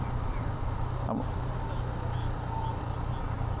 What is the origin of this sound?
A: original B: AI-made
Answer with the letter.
A